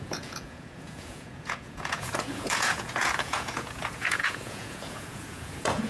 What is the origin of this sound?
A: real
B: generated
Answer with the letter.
B